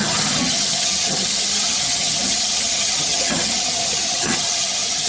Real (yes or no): no